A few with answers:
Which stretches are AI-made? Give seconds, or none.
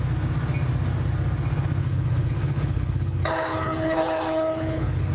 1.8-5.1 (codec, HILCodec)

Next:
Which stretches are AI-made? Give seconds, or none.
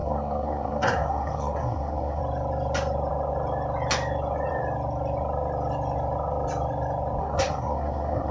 0.0-2.2 (codec, SNAC); 7.2-8.3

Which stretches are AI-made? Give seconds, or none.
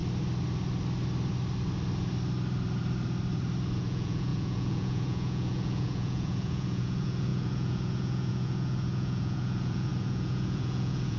3.8-11.2 (vocoder, Vocos)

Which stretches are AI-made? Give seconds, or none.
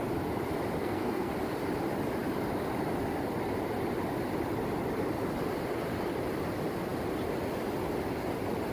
0.8-1.3 (codec, SNAC)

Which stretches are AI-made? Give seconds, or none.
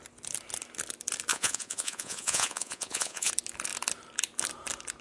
1.3-3.3 (vocoder, Vocos)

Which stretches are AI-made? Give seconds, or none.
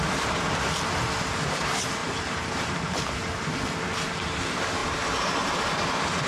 2.0-3.2 (vocoder, BigVGAN v2); 4.8-5.5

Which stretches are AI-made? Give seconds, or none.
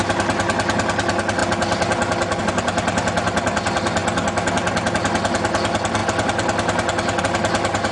none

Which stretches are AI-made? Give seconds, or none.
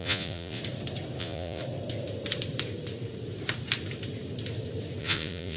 0.0-0.6 (vocoder, Vocos); 1.2-1.6; 5.0-5.6